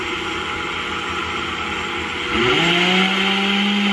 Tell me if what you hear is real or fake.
real